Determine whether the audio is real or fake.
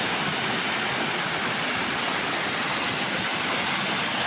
real